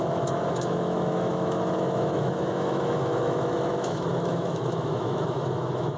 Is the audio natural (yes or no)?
no